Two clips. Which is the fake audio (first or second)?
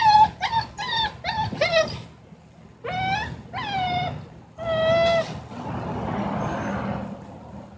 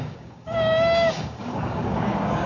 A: second